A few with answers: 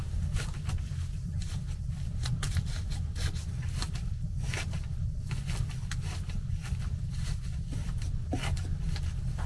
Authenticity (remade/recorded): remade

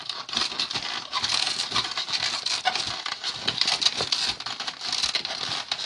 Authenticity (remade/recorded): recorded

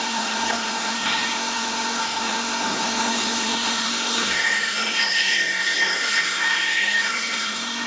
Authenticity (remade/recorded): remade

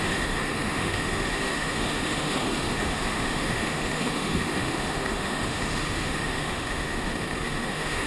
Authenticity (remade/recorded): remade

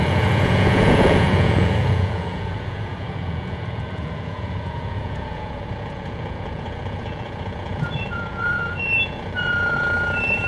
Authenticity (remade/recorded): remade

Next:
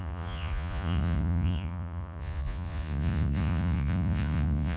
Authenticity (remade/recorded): remade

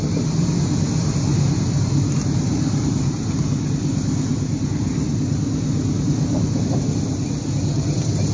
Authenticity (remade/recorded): recorded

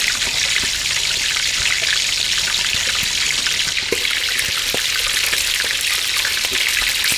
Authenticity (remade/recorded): recorded